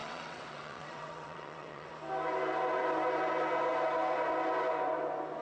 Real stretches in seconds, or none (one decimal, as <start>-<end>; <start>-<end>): 1.9-5.4